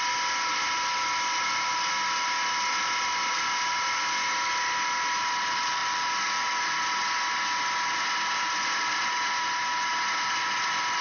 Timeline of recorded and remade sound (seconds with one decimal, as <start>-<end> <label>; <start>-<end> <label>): 0.0-11.0 recorded

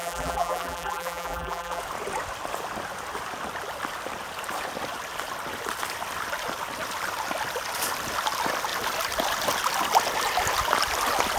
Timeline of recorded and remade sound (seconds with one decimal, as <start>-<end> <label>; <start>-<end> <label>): 0.0-1.8 remade; 1.8-11.4 recorded

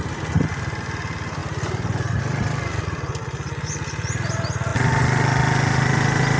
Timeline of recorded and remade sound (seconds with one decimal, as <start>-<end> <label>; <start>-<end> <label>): 0.0-6.4 recorded

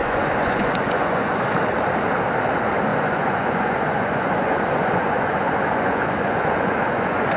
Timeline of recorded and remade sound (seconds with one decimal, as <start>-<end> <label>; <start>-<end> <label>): 0.0-1.4 remade; 1.4-2.9 recorded; 2.9-7.4 remade

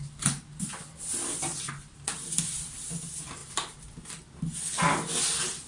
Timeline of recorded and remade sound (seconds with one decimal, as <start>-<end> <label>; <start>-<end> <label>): 0.0-3.4 recorded; 3.4-4.0 remade; 4.0-5.7 recorded

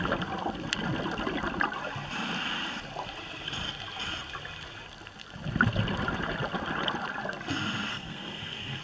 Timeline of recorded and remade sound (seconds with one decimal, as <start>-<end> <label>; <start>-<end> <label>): 0.0-7.9 recorded; 7.9-8.8 remade

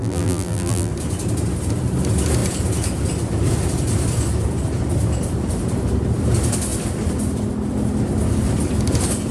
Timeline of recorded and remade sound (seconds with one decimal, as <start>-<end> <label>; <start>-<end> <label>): 0.0-0.9 remade; 0.9-9.3 recorded

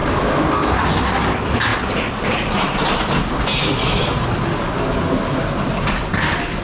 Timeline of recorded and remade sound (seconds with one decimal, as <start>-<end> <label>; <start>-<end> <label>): 0.0-6.6 recorded